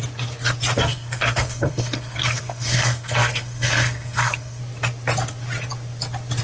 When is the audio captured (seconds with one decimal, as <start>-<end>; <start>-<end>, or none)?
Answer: 0.0-0.8; 4.6-6.4